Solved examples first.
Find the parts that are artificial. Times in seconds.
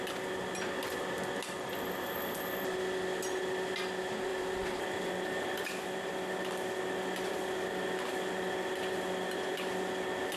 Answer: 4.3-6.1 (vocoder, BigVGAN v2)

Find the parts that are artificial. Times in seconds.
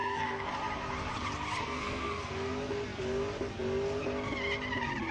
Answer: 0.0-0.5 (codec, SNAC); 1.6-2.5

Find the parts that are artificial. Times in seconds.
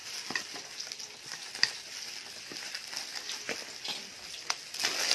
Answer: none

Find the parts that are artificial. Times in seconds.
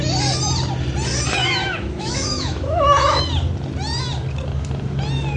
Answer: 1.4-3.2 (autoencoder, DAC-VAE)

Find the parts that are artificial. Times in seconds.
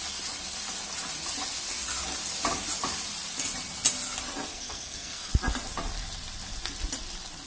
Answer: 4.5-5.3 (codec, SNAC)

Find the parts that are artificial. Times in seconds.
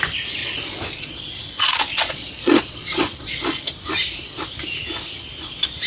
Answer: 0.4-3.6 (vocoder, Vocos)